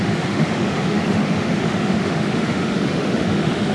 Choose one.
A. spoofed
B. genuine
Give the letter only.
A